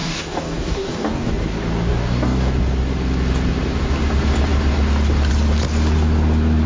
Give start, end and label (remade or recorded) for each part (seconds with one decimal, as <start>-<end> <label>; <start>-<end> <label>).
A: 0.0-1.3 remade; 1.3-1.9 recorded; 1.9-2.5 remade; 2.5-6.7 recorded